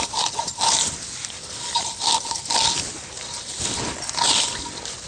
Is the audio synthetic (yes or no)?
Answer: no